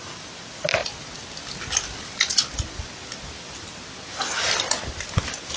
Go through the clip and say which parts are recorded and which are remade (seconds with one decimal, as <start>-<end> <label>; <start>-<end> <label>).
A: 0.0-5.6 recorded